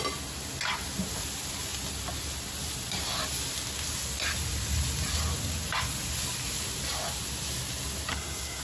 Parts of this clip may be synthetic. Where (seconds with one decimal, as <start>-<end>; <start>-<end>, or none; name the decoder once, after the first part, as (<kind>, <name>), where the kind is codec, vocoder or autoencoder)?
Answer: 8.1-8.6 (codec, SNAC)

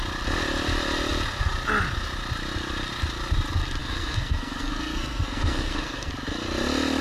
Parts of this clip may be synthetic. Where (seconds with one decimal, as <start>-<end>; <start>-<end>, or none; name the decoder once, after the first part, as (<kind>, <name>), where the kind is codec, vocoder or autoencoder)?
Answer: 3.8-6.1 (codec, SNAC)